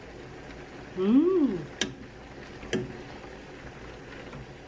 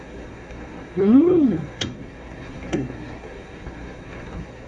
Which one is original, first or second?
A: first